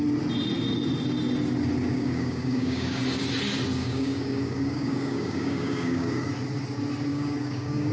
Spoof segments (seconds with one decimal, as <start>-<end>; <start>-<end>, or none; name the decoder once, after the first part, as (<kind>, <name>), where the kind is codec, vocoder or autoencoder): 1.9-3.0 (codec, DAC); 3.8-6.3; 7.1-7.9